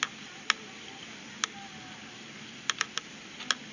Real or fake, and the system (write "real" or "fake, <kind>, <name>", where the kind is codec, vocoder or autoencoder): real